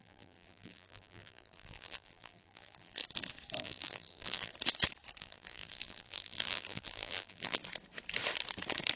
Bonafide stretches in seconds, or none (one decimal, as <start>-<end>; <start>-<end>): 3.0-3.6; 4.5-5.2; 7.6-9.0